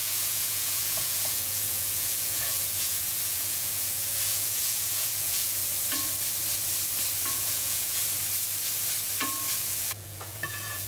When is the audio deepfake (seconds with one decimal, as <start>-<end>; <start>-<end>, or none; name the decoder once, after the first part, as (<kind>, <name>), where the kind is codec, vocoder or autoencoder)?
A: 0.0-5.6 (vocoder, Vocos); 7.3-8.0; 9.7-10.9